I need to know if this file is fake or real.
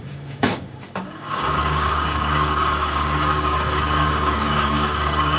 fake